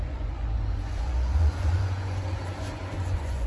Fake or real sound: fake